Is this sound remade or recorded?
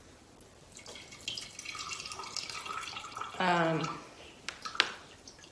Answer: recorded